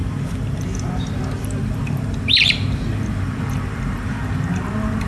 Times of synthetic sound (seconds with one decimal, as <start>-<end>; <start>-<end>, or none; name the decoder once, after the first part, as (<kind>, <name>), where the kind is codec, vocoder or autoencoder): 1.1-5.1 (vocoder, BigVGAN v2)